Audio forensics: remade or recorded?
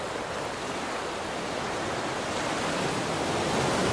recorded